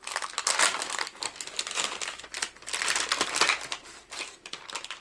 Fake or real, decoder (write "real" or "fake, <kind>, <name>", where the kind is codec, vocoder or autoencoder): real